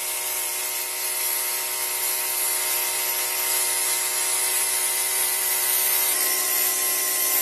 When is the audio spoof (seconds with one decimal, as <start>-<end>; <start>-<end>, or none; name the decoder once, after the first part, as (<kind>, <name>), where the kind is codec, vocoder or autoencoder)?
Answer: 0.0-0.6 (vocoder, BigVGAN v2); 4.5-6.1